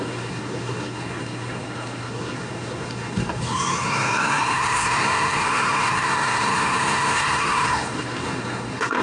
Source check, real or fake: fake